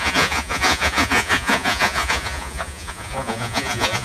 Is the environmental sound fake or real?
fake